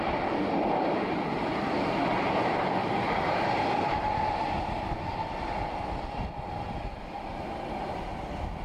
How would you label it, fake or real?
real